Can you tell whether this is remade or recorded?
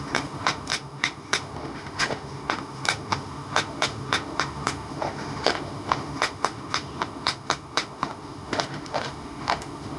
remade